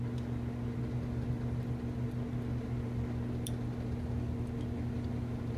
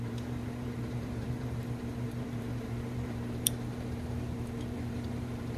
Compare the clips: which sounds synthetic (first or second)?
second